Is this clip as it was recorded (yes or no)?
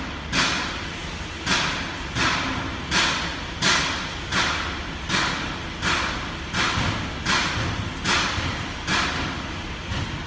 yes